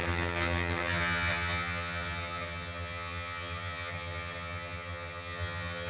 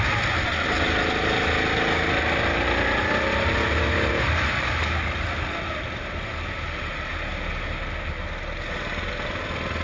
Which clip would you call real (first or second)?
second